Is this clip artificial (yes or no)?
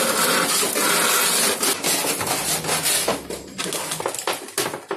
no